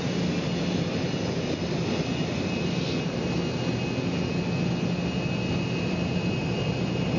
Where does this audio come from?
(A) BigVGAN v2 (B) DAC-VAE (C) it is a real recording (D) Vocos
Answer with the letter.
C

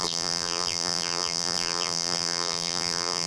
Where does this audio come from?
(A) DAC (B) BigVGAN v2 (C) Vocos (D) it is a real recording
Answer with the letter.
B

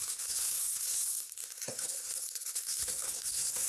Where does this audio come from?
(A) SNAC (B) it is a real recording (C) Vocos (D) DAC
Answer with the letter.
A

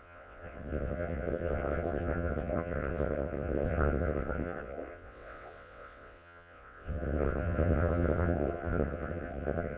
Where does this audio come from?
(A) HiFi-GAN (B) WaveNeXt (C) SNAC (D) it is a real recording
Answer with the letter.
B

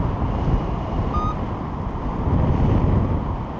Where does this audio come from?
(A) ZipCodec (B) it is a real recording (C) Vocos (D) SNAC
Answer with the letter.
B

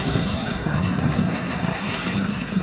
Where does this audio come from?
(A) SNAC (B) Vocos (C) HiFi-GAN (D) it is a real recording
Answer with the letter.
A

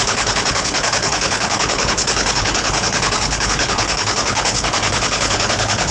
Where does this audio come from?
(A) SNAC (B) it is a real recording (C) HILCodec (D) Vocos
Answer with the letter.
C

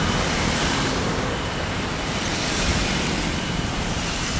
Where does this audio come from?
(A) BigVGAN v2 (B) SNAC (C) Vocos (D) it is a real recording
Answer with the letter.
A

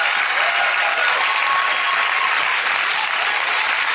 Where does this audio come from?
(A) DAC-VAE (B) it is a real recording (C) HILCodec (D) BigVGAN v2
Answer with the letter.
B